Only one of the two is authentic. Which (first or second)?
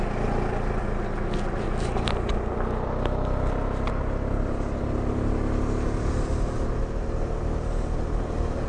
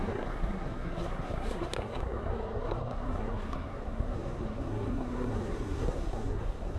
first